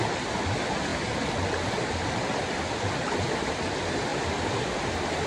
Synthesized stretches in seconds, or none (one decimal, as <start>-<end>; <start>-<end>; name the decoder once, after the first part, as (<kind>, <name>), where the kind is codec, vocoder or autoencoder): none